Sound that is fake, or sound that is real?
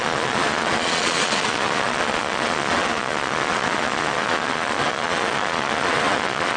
fake